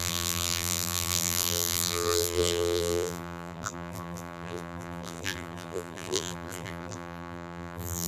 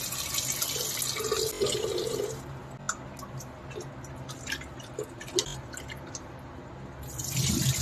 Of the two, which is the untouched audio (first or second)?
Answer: second